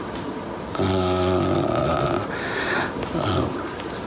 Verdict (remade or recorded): recorded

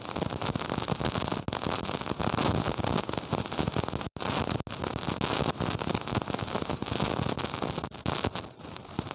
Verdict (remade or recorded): recorded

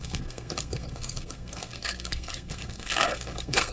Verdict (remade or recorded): remade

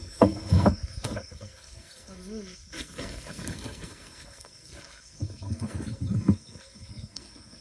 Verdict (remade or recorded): remade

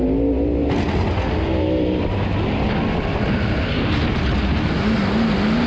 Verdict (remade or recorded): recorded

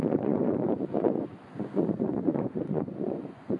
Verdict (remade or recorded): remade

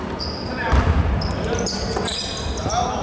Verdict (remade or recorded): remade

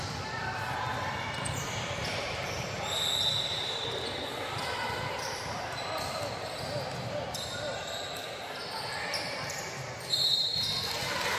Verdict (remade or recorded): remade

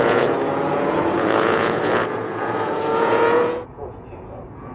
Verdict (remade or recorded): remade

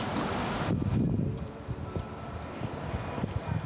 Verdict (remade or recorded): recorded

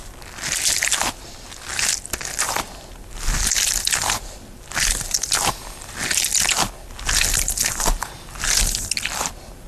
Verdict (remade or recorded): recorded